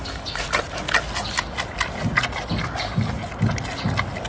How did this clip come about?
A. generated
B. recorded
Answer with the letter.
B